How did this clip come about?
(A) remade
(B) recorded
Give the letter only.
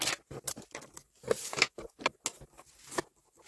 B